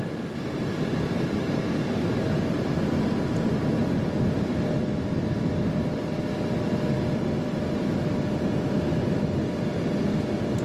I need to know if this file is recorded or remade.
recorded